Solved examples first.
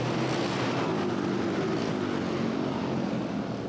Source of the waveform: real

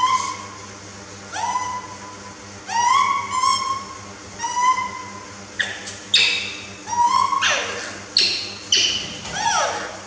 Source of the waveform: real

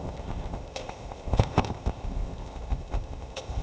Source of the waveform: fake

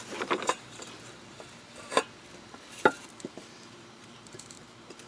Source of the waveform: fake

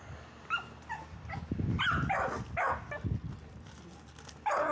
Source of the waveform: real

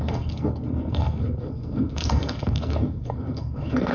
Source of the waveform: fake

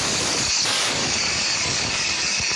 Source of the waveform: fake